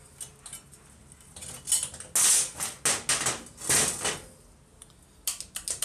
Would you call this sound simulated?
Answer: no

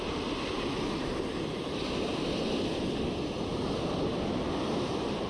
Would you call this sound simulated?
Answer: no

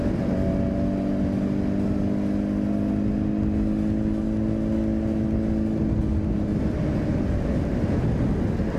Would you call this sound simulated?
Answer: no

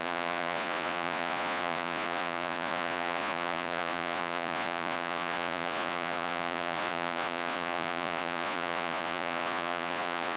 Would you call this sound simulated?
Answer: yes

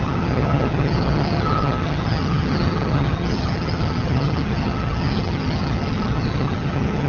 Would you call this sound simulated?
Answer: yes